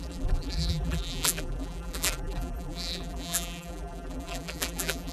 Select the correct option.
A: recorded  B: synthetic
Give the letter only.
B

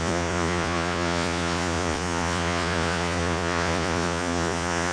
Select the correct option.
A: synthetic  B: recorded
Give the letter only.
A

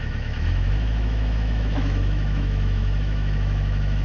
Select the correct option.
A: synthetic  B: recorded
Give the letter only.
A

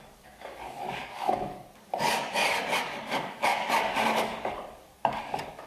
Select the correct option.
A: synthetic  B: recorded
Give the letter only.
A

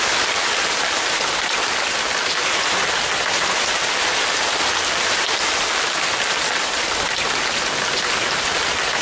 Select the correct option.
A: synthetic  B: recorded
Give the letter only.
B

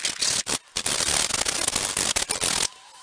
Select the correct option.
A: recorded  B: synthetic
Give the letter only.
A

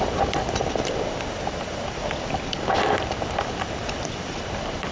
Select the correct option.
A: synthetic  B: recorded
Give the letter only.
B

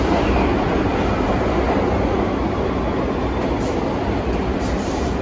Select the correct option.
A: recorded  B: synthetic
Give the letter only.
A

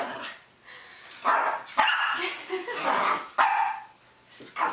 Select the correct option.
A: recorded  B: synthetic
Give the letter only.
A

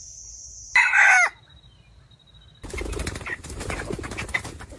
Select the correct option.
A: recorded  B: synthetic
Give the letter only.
A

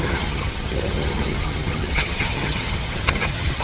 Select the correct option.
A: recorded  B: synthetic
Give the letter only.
B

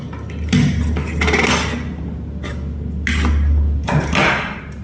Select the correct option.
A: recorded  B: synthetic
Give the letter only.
A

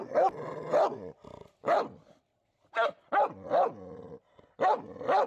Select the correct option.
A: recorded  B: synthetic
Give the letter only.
A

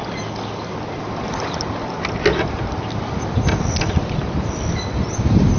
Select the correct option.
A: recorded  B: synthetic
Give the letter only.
A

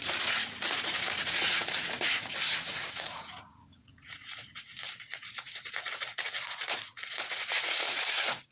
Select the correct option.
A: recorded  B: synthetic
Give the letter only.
B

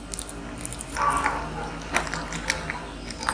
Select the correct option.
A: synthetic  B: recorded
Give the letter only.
B